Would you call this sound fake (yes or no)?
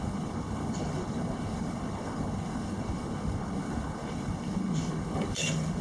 yes